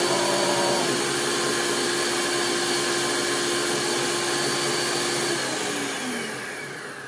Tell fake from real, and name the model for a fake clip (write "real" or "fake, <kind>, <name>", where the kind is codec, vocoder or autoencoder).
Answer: real